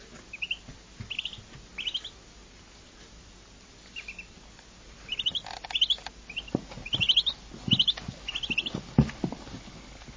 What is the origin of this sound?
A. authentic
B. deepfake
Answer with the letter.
A